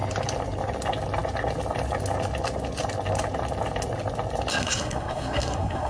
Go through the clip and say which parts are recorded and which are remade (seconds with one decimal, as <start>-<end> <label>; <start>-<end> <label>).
0.0-4.5 recorded; 4.5-5.9 remade